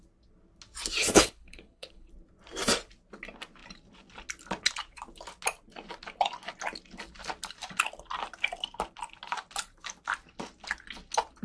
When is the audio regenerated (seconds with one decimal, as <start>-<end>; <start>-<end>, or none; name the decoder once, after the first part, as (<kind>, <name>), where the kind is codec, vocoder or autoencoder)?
1.0-2.1 (codec, HILCodec)